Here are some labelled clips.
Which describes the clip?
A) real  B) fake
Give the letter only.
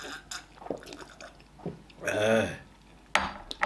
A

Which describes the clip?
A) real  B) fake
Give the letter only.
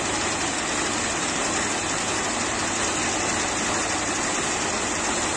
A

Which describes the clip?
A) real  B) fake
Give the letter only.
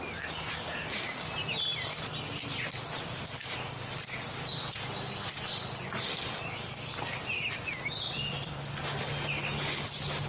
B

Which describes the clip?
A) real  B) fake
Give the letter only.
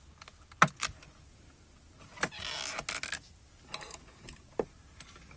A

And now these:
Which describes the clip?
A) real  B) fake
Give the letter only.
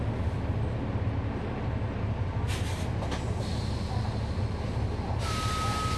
A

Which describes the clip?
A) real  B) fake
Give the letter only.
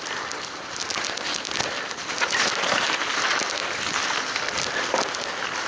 A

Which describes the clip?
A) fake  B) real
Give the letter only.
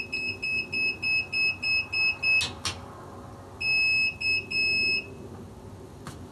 B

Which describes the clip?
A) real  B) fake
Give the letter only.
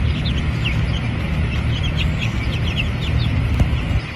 A